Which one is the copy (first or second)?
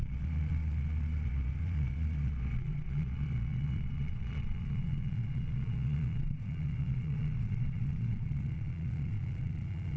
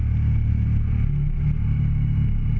first